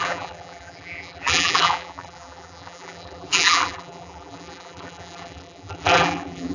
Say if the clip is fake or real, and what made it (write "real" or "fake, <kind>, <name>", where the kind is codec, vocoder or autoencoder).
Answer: fake, vocoder, BigVGAN v2